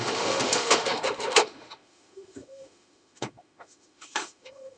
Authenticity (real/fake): fake